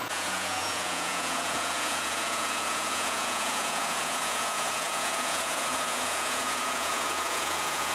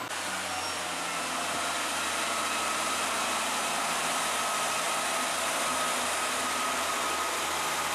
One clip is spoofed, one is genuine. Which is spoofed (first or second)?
first